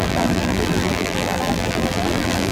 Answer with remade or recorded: remade